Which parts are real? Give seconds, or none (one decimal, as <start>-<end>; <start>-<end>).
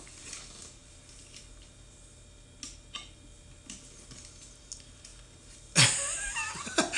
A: 0.0-7.0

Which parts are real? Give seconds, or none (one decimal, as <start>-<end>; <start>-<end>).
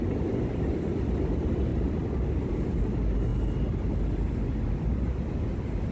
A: 0.0-1.7; 2.5-5.9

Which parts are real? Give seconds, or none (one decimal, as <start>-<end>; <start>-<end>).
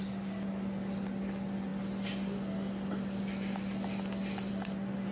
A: 0.0-5.1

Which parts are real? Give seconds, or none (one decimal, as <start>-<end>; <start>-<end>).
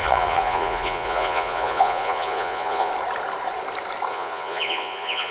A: 2.9-4.1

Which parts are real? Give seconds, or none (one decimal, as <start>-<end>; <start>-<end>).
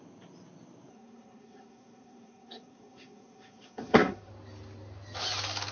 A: 0.0-0.9; 4.3-5.7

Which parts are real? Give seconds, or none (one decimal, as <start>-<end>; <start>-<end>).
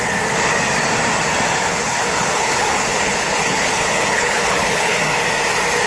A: 0.0-1.5; 5.0-5.9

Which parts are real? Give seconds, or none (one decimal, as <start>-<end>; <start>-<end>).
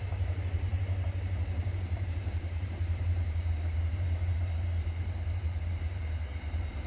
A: 0.7-1.6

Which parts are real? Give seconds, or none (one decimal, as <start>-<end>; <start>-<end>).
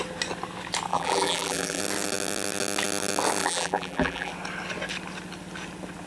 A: 0.0-0.9; 1.8-3.4; 4.3-6.1